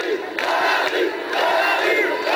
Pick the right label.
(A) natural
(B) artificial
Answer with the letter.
A